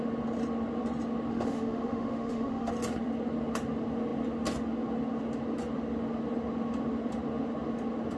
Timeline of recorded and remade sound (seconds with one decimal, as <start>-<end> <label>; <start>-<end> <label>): 0.0-1.3 recorded; 1.3-2.7 remade; 2.7-8.2 recorded